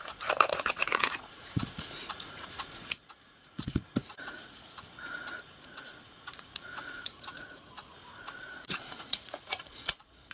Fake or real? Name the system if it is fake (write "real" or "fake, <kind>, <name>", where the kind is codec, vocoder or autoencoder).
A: fake, vocoder, Vocos